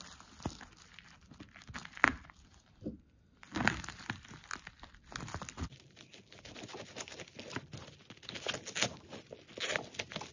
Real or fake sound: real